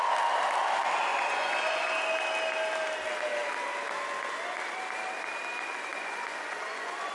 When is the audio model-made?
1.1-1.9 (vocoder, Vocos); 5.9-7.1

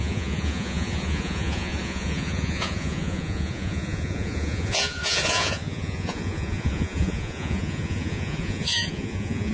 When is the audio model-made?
0.0-9.5 (vocoder, Vocos)

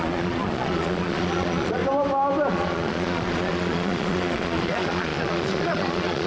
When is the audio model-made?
0.0-1.8 (vocoder, Vocos); 2.5-6.3

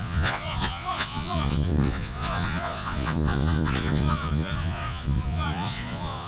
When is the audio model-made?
0.0-6.3 (vocoder, Vocos)